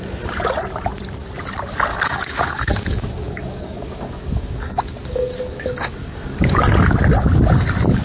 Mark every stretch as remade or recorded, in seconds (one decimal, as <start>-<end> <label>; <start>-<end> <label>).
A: 0.0-1.9 recorded; 1.9-6.7 remade; 6.7-8.0 recorded